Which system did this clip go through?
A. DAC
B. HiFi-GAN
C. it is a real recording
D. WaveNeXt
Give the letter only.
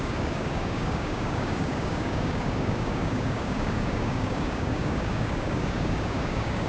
A